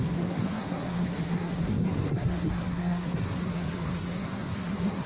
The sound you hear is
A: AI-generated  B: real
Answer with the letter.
A